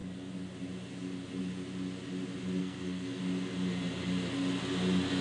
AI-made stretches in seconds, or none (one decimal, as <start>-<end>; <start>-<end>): 2.6-3.2